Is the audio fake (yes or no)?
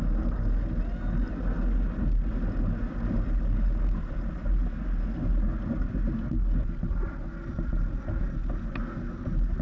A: no